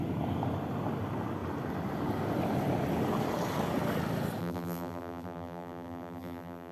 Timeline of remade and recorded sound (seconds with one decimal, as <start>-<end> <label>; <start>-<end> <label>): 0.0-4.4 recorded; 4.4-6.7 remade